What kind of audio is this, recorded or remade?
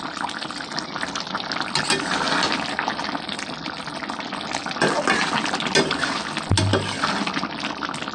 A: recorded